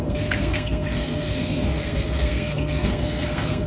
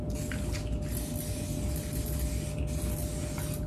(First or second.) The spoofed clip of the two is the first